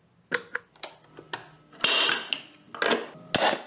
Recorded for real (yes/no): yes